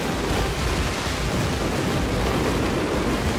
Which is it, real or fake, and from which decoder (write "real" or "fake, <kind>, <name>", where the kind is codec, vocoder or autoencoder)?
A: real